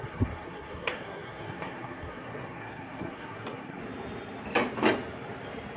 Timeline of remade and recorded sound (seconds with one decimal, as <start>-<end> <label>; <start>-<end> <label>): 0.0-3.8 remade; 3.8-5.8 recorded

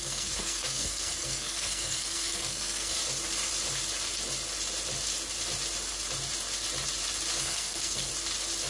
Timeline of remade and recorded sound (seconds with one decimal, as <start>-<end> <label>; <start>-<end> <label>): 0.0-3.0 remade; 3.0-7.4 recorded; 7.4-8.1 remade; 8.1-8.7 recorded

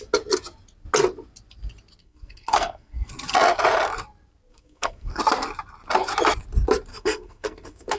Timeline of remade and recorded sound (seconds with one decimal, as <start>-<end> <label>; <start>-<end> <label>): 0.0-2.0 recorded; 2.0-3.1 remade; 3.1-4.5 recorded; 4.5-5.2 remade; 5.2-6.9 recorded; 6.9-8.0 remade

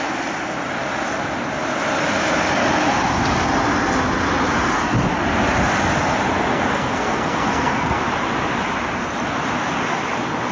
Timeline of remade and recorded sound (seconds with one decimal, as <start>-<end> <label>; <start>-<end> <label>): 0.0-6.5 recorded; 6.5-8.0 remade; 8.0-10.5 recorded

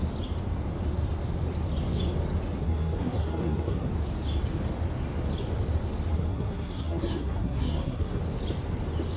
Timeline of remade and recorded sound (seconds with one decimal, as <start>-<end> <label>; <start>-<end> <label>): 0.0-2.6 recorded; 2.6-3.9 remade; 3.9-6.1 recorded; 6.1-8.2 remade; 8.2-9.2 recorded

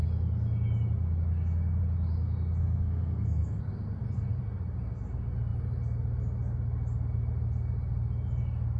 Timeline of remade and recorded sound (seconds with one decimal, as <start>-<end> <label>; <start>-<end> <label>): 0.0-2.6 recorded; 2.6-3.6 remade; 3.6-8.8 recorded

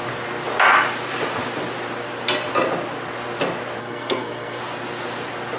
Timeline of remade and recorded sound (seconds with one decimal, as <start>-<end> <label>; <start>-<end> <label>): 0.0-3.8 recorded; 3.8-4.6 remade; 4.6-5.6 recorded

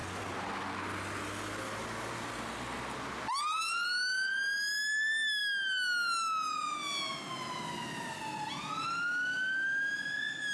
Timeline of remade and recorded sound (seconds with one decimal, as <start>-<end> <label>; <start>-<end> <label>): 0.0-10.5 recorded